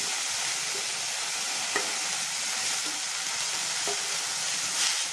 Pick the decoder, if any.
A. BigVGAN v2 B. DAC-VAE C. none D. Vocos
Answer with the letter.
C